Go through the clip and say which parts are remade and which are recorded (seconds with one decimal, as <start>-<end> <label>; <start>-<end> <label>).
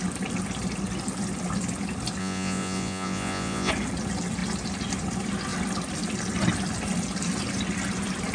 0.0-2.2 recorded; 2.2-3.7 remade; 3.7-8.3 recorded